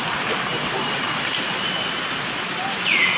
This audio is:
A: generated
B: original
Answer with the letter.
A